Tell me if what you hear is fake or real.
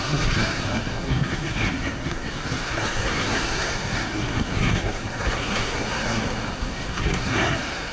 fake